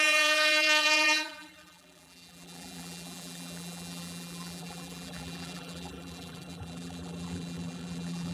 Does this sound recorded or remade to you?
remade